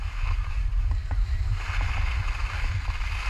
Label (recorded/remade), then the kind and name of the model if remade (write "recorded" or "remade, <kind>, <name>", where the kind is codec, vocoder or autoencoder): recorded